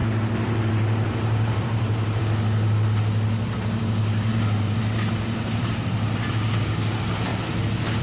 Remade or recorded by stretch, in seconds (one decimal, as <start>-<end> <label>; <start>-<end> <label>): 0.0-2.2 remade; 2.2-4.3 recorded; 4.3-5.7 remade; 5.7-8.0 recorded